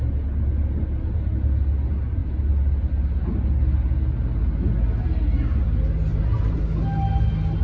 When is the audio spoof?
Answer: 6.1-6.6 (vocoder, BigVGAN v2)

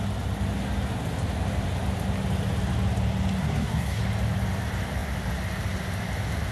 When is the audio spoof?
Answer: 3.4-4.0 (codec, SNAC)

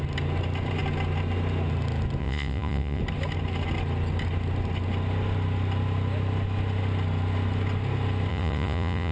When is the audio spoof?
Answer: 2.2-3.0 (vocoder, Vocos); 8.3-9.1

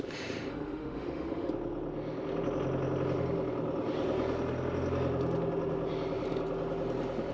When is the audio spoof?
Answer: 0.5-1.5 (autoencoder, DAC-VAE)

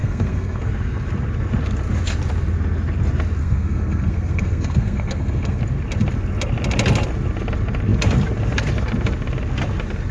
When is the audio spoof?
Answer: 0.0-0.7 (codec, SNAC); 3.4-5.6

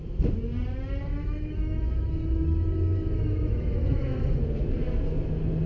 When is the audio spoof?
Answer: 1.1-4.4 (autoencoder, DAC-VAE)